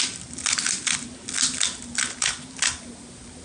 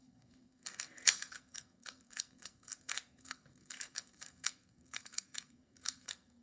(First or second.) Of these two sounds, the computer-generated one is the second